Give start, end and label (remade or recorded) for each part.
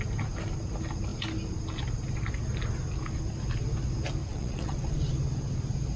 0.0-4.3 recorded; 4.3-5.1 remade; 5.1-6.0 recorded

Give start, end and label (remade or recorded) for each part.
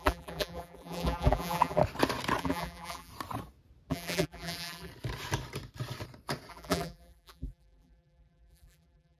0.0-1.8 remade; 1.8-2.4 recorded; 2.4-3.1 remade; 3.1-3.9 recorded; 3.9-4.9 remade; 4.9-6.5 recorded; 6.5-9.2 remade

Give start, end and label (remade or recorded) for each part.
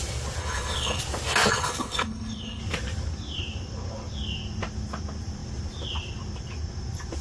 0.0-0.4 recorded; 0.4-1.0 remade; 1.0-1.5 recorded; 1.5-2.6 remade; 2.6-7.2 recorded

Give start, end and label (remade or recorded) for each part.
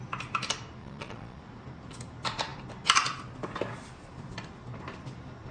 0.0-0.8 recorded; 0.8-1.4 remade; 1.4-5.5 recorded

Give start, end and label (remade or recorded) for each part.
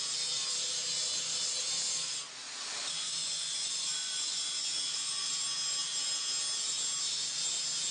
0.0-2.8 recorded; 2.8-5.3 remade; 5.3-7.9 recorded